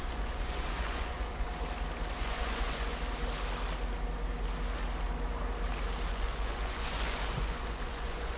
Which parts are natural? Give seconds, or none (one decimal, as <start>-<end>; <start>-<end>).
1.5-2.2; 2.9-6.1